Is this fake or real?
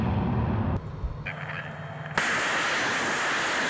real